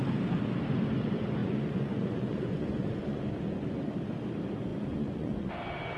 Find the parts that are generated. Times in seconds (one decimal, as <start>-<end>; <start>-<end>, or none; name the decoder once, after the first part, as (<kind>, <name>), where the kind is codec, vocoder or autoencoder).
1.4-3.2 (vocoder, Vocos); 4.7-5.5